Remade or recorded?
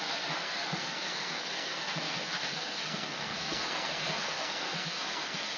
remade